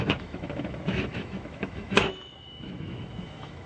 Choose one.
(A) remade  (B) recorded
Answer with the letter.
A